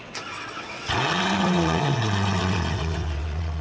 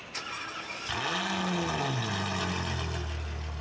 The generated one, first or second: first